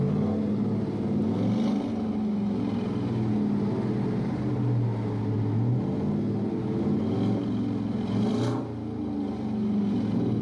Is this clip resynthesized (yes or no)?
no